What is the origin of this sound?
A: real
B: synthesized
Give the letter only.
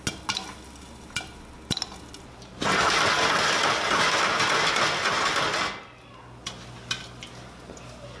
A